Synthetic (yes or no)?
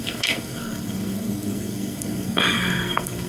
yes